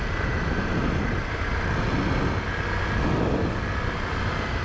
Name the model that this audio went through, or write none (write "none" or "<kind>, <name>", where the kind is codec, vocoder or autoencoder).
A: none